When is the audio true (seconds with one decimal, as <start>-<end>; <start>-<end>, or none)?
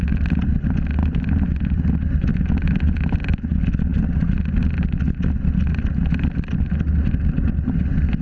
0.0-8.2